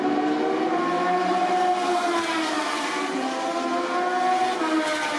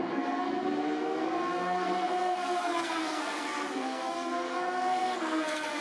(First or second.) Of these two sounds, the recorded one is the first